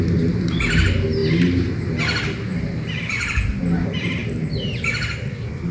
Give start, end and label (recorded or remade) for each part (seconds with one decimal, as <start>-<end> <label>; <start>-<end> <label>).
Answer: 0.0-2.5 recorded; 2.5-3.6 remade; 3.6-4.2 recorded; 4.2-4.9 remade; 4.9-5.7 recorded

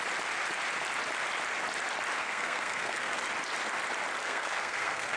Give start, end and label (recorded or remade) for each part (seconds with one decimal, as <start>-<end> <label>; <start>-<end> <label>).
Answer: 0.0-2.2 recorded; 2.2-3.2 remade; 3.2-4.2 recorded; 4.2-5.2 remade

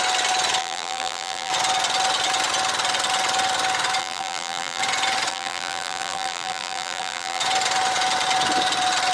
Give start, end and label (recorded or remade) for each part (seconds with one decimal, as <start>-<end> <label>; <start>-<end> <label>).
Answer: 0.0-0.6 recorded; 0.6-1.5 remade; 1.5-4.0 recorded; 4.0-4.8 remade; 4.8-5.3 recorded; 5.3-7.4 remade; 7.4-9.1 recorded